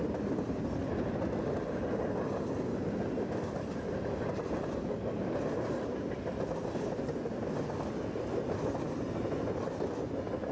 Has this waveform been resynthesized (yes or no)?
no